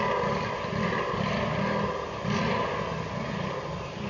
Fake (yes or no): no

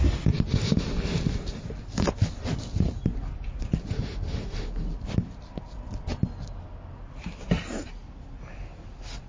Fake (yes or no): no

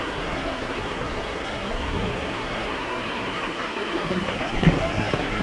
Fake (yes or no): yes